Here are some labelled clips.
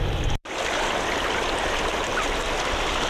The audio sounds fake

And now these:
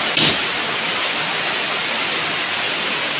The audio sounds real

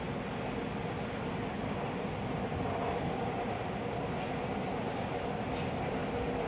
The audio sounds real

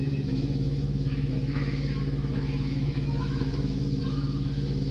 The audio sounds fake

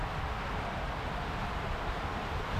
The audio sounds real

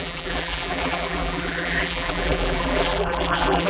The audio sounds fake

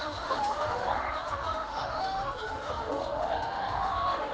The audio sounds fake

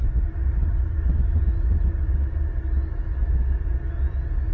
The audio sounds real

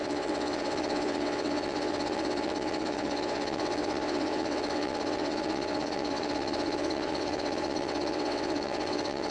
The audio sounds fake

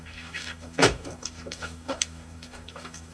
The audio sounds fake